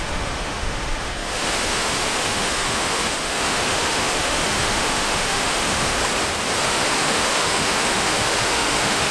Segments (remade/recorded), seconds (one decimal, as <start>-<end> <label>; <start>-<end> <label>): 0.0-6.0 remade; 6.0-6.6 recorded; 6.6-9.1 remade